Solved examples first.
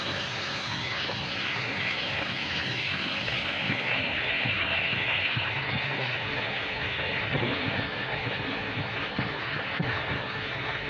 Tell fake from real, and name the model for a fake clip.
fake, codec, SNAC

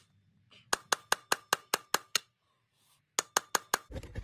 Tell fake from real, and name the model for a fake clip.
real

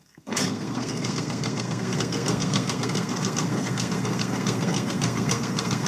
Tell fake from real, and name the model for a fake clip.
fake, codec, SNAC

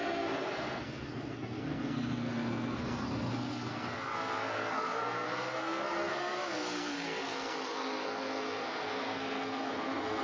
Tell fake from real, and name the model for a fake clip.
fake, codec, SNAC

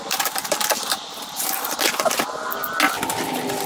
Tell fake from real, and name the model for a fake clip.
real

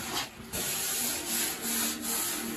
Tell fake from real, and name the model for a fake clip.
real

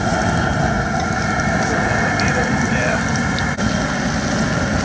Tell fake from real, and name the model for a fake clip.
real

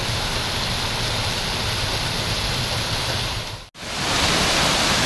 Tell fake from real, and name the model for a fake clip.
real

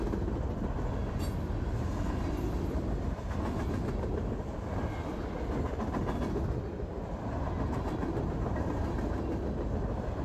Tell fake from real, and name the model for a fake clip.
real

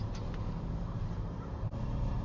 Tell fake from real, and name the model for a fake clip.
fake, vocoder, BigVGAN v2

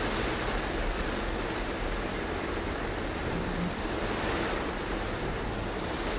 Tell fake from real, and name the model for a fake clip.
real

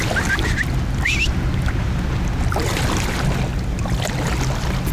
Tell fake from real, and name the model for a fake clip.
real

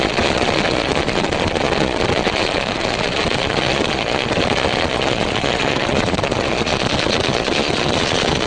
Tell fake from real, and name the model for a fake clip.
fake, vocoder, Vocos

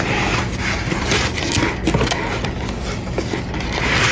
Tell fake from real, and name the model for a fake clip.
real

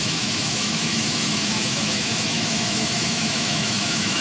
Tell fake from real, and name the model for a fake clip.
fake, autoencoder, DAC-VAE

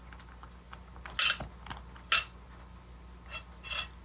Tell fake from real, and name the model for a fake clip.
real